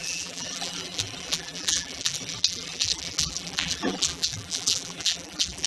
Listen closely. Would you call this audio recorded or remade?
remade